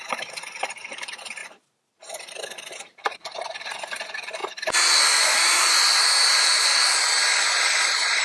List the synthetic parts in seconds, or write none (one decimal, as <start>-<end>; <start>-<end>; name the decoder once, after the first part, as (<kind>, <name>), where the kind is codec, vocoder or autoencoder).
0.0-1.4 (vocoder, BigVGAN v2); 2.7-4.4; 5.2-6.7; 7.4-8.2